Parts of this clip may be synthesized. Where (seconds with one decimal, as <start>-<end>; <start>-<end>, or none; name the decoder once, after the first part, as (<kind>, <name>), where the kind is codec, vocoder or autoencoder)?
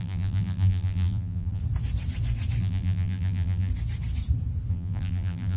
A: 0.0-1.6 (vocoder, BigVGAN v2); 2.6-3.7; 4.7-5.6